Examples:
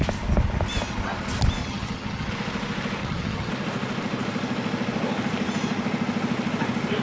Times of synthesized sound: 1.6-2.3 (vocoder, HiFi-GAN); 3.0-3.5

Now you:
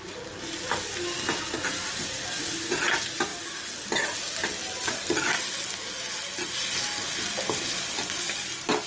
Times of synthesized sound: none